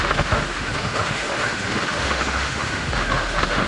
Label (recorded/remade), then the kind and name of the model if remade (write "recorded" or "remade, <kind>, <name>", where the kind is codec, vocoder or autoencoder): remade, autoencoder, DAC-VAE